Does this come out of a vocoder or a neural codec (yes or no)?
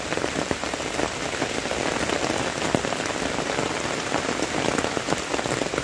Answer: no